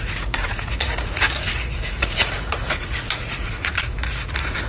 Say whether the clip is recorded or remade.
remade